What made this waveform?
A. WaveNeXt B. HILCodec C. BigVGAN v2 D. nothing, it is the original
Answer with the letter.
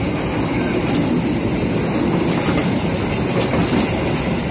D